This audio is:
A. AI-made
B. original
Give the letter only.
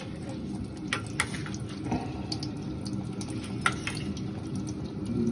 B